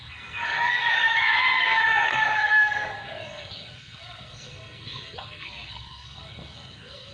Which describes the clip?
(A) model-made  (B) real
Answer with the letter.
A